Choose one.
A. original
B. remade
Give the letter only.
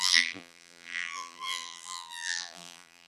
B